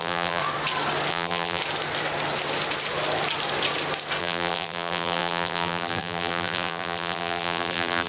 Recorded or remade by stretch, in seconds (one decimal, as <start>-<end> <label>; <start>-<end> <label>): 0.0-0.4 remade; 0.4-1.1 recorded; 1.1-1.6 remade; 1.6-4.2 recorded; 4.2-8.1 remade